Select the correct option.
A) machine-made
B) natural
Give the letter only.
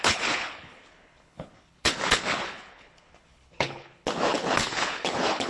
A